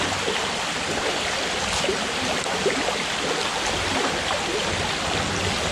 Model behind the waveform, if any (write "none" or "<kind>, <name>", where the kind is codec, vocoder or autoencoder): none